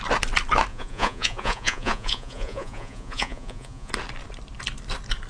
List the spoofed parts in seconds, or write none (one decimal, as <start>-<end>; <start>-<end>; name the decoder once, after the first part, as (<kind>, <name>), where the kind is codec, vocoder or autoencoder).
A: 0.7-3.9 (vocoder, Vocos)